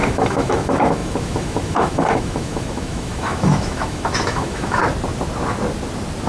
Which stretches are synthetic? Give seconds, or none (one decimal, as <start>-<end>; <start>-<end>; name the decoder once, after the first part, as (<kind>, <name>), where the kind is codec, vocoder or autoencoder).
0.0-4.8 (autoencoder, DAC-VAE)